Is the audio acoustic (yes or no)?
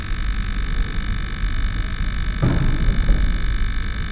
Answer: yes